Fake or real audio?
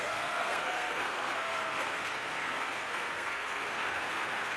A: fake